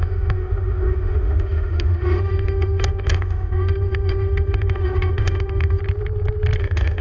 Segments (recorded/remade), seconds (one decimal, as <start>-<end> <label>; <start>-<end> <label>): 0.0-5.8 remade; 5.8-6.6 recorded; 6.6-7.0 remade